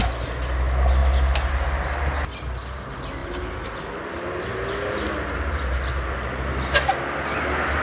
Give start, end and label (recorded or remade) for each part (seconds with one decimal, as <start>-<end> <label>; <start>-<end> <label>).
0.0-7.8 recorded